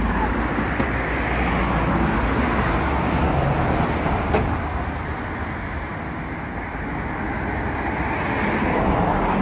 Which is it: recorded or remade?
recorded